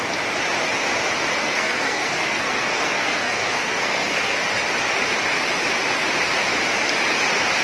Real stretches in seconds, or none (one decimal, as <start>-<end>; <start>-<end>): 0.0-1.4; 4.4-7.6